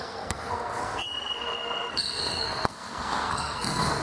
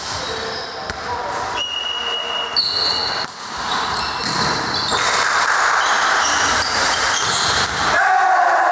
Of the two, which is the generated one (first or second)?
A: first